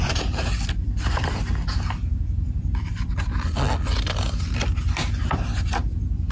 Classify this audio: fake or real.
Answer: real